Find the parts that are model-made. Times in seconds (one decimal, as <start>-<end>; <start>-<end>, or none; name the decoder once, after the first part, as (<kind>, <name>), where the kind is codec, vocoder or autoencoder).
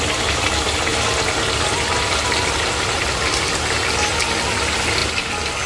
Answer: none